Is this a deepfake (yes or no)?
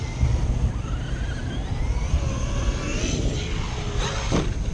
no